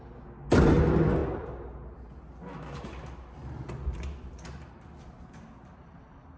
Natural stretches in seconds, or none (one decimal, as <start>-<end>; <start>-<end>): 0.0-6.4